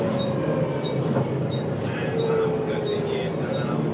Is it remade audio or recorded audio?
recorded